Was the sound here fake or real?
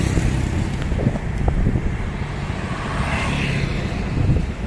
real